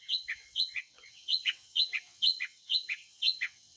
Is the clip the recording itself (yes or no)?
no